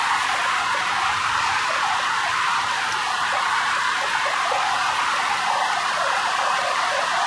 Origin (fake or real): real